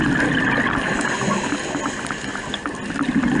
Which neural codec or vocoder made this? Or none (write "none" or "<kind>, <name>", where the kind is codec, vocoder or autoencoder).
none